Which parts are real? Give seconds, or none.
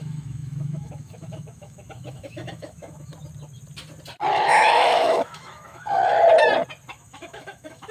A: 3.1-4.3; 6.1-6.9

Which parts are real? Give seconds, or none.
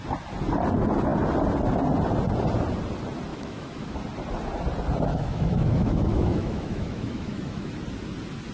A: 0.0-3.3; 4.0-5.1; 7.7-8.5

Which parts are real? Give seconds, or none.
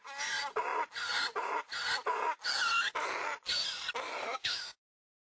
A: 0.0-4.2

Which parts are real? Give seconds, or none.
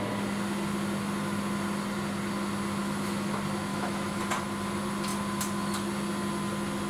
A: 0.0-2.8; 3.3-3.7; 4.2-6.9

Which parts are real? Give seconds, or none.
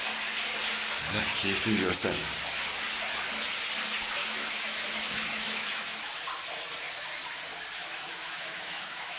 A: 0.0-4.2; 6.2-7.8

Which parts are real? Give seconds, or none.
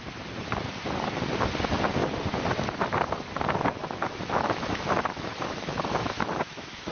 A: 0.0-3.8